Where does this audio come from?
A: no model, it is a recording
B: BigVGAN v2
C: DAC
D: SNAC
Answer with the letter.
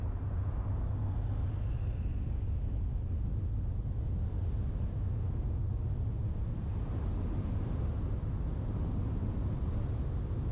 A